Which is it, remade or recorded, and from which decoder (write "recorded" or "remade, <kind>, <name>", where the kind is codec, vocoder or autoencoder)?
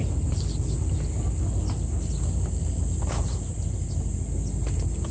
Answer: recorded